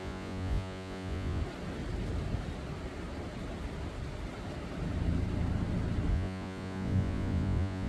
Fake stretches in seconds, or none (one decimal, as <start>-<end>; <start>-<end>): 0.0-1.4; 6.1-7.9